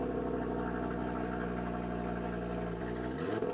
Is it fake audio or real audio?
real